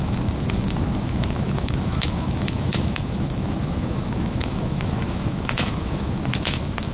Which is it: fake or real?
fake